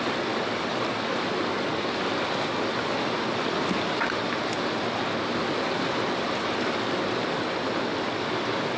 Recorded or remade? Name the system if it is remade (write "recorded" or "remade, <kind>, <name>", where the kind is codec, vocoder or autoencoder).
recorded